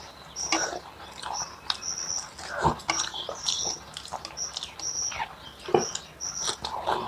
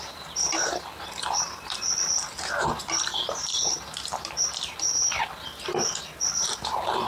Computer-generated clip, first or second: second